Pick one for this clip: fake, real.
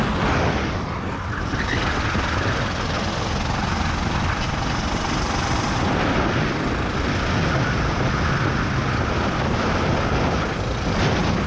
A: real